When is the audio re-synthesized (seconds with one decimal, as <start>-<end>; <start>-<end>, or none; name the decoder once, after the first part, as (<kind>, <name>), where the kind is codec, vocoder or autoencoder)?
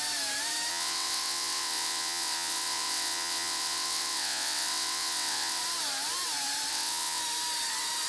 0.7-5.6 (vocoder, WaveNeXt); 6.7-7.2